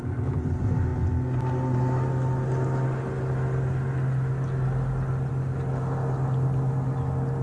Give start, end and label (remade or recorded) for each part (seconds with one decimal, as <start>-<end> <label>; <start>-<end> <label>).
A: 0.0-7.4 recorded